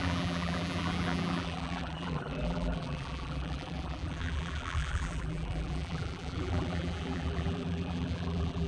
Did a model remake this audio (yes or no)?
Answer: yes